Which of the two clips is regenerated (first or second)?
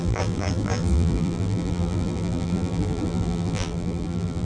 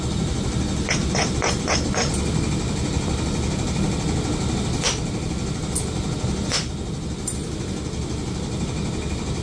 first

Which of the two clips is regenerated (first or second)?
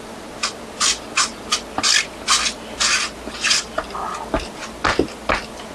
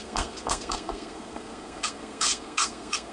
second